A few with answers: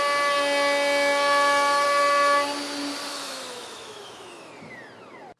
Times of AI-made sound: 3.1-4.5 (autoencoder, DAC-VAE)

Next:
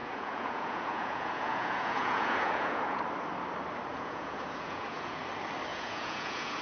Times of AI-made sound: 0.0-3.0 (vocoder, Vocos); 3.9-5.2; 5.7-6.6